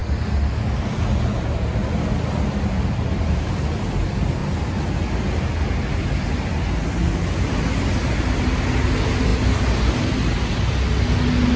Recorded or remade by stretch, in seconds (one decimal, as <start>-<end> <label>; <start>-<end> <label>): 0.0-11.6 recorded